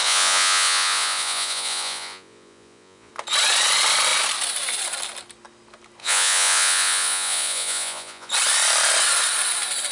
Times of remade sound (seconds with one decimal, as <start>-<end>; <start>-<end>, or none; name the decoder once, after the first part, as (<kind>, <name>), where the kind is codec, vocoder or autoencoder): 0.0-3.1 (vocoder, Vocos); 6.0-8.3